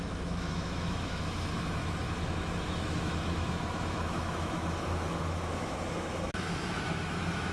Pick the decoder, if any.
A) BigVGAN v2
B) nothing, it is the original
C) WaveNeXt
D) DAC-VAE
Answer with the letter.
D